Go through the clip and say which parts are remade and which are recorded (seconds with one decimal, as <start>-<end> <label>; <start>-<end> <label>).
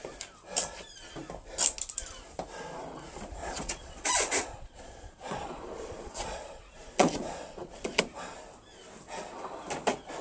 0.0-3.4 recorded; 3.4-8.0 remade; 8.0-10.2 recorded